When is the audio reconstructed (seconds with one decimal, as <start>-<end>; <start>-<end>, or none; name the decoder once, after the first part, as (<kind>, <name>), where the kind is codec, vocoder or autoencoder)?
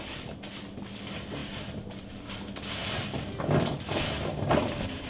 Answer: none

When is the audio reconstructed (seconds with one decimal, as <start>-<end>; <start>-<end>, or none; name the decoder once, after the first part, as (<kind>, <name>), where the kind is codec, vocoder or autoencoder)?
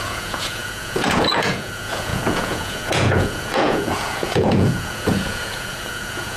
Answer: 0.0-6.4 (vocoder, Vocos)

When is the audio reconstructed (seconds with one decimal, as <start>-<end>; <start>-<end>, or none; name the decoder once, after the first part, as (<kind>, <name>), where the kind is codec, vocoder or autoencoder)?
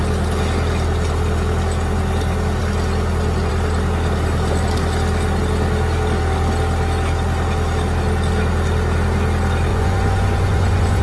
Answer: 9.7-11.0 (vocoder, Vocos)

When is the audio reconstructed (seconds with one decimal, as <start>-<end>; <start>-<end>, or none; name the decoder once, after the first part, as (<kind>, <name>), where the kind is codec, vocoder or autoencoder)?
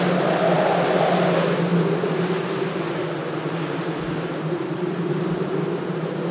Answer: none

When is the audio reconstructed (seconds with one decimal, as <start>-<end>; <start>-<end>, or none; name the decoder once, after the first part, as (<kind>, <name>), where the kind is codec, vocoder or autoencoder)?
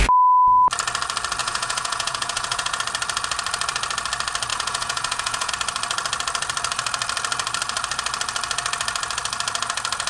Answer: 1.4-2.8 (vocoder, Vocos); 4.5-5.5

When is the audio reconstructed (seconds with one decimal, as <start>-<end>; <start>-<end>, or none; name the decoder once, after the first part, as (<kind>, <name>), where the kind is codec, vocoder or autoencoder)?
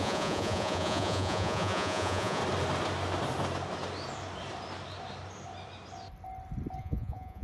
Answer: 0.0-2.4 (vocoder, Vocos); 6.8-7.4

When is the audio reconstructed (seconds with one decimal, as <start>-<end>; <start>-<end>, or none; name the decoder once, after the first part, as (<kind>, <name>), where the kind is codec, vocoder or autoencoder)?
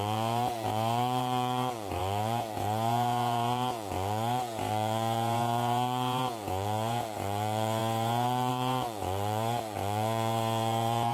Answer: 0.0-11.1 (vocoder, Vocos)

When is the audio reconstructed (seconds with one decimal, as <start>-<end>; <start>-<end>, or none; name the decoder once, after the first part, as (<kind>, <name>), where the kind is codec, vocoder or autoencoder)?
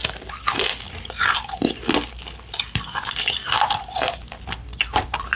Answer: none